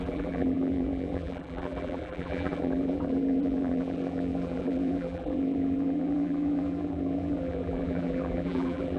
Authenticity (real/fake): fake